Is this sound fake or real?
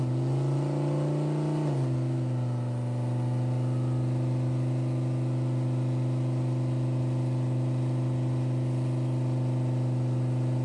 real